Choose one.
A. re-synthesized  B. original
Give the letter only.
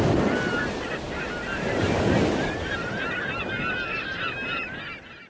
B